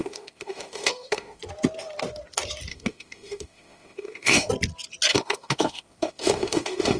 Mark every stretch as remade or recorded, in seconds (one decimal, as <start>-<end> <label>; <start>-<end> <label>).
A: 0.0-1.4 remade; 1.4-2.7 recorded; 2.7-4.5 remade; 4.5-5.1 recorded; 5.1-7.0 remade